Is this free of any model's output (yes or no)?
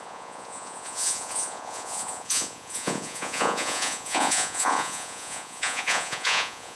no